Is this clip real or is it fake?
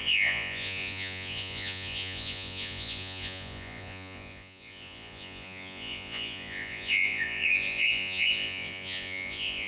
fake